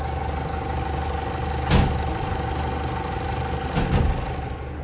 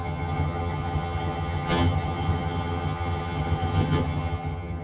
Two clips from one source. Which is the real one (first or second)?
first